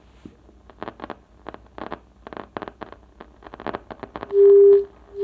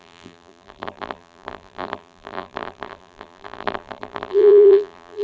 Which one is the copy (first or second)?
second